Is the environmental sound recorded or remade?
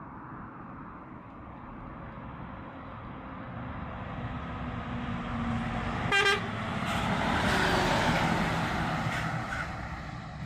recorded